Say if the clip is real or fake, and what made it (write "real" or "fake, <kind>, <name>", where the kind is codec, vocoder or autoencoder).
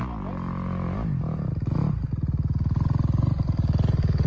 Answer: real